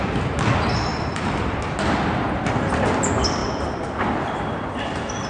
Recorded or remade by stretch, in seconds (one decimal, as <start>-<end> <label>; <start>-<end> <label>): 0.0-0.9 recorded; 0.9-1.6 remade; 1.6-5.3 recorded